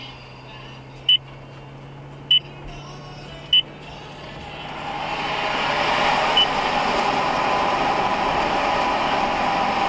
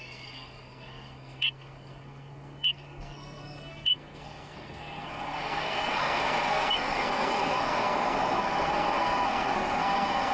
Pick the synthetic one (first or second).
second